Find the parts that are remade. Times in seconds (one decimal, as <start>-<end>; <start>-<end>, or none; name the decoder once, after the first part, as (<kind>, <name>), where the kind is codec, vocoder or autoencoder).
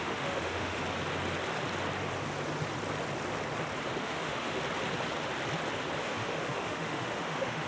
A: 0.0-0.8 (autoencoder, DAC-VAE); 4.0-4.6; 6.0-7.7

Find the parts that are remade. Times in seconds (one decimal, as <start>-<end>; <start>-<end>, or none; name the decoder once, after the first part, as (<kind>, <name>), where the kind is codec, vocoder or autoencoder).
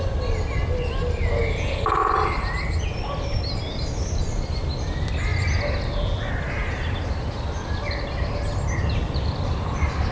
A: none